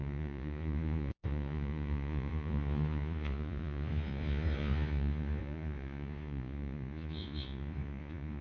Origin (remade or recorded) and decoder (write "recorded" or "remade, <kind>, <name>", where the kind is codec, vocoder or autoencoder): remade, vocoder, Vocos